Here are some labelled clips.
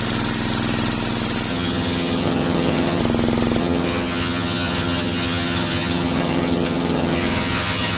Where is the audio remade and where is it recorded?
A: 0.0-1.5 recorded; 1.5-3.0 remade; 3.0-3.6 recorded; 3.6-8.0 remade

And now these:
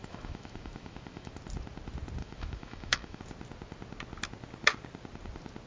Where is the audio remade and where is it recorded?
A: 0.0-1.3 remade; 1.3-2.2 recorded; 2.2-3.2 remade; 3.2-5.7 recorded

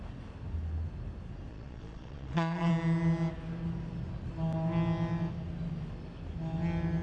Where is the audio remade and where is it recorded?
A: 0.0-1.5 recorded; 1.5-2.7 remade; 2.7-7.0 recorded